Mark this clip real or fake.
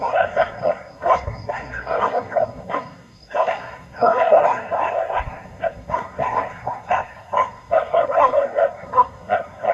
fake